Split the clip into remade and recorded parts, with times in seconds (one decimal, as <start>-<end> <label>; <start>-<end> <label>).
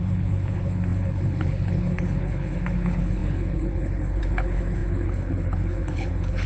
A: 0.0-6.5 remade